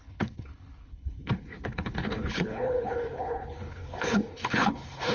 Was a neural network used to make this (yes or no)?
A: yes